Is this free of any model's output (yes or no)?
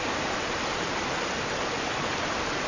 yes